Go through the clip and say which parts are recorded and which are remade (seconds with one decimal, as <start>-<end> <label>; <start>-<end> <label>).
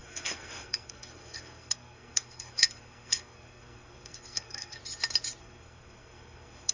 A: 0.0-4.8 remade; 4.8-5.4 recorded; 5.4-6.7 remade